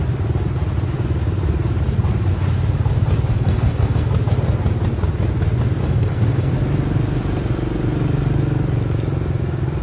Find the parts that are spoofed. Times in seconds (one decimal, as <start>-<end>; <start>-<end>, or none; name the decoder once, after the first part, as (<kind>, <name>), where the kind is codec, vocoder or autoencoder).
3.3-4.1 (codec, SNAC); 5.8-6.5